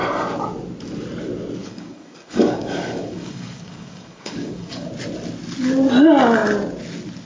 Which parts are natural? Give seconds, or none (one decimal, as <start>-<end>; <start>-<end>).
0.0-1.6; 4.9-7.3